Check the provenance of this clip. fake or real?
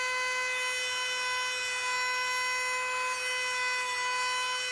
real